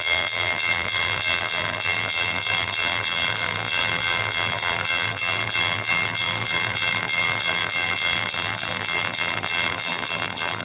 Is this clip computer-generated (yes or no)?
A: yes